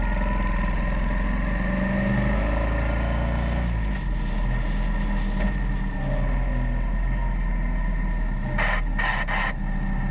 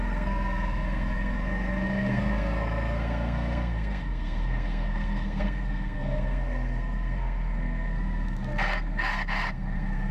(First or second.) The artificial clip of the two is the second